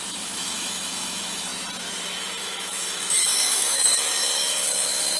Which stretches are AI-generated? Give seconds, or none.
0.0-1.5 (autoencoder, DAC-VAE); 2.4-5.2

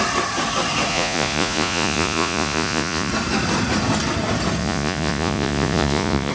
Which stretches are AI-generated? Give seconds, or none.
0.9-3.1 (vocoder, Vocos); 4.6-6.3

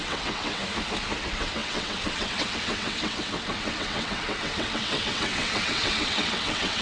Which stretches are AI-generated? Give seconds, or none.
0.0-0.6 (vocoder, WaveNeXt); 1.2-6.8

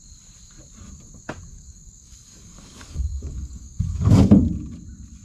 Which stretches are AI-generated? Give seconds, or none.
1.5-4.4 (codec, DAC)

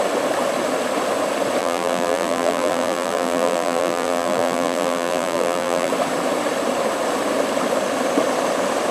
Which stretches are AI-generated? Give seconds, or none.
1.6-5.9 (vocoder, BigVGAN v2)